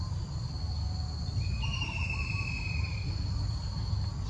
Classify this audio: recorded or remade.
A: recorded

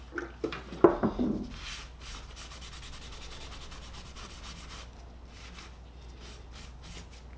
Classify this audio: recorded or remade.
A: recorded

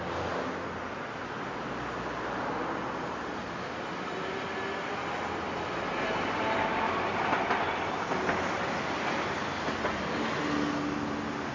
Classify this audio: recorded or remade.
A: recorded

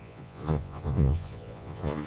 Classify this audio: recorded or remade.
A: remade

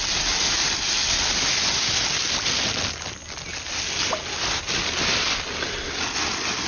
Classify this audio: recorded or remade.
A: recorded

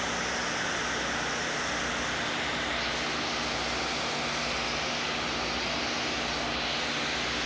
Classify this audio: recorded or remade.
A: recorded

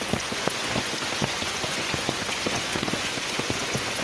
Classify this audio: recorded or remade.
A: remade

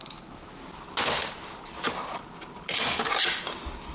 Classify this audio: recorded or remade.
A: recorded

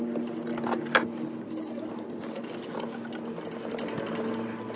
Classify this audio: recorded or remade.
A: recorded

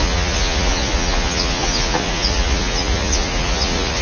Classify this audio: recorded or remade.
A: remade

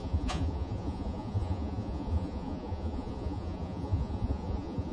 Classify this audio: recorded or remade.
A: remade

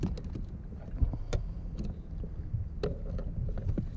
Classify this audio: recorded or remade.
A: recorded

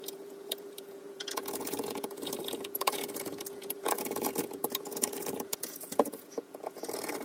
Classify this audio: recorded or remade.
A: remade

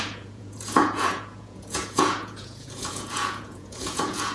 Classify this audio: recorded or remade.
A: remade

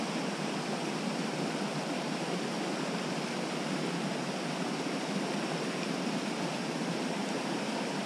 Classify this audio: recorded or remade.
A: recorded